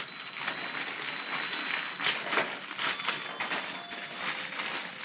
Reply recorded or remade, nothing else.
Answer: recorded